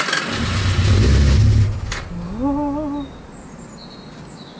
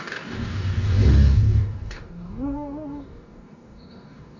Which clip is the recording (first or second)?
first